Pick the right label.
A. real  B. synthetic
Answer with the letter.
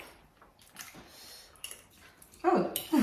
A